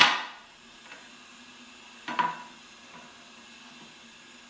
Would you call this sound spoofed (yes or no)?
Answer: no